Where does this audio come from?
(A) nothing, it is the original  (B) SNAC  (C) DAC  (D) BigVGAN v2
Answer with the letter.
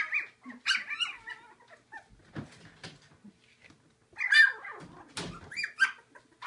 A